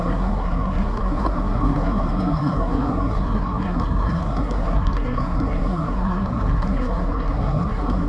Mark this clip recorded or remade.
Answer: remade